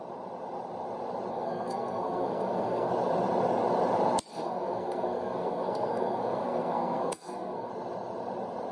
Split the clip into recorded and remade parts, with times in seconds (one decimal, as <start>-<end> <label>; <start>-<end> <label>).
0.0-1.3 recorded; 1.3-2.9 remade; 2.9-4.3 recorded; 4.3-7.7 remade; 7.7-8.7 recorded